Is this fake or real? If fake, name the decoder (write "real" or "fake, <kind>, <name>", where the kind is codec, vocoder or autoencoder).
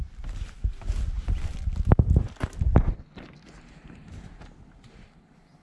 real